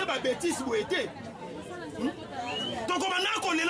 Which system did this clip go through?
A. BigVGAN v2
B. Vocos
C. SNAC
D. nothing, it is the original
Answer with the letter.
D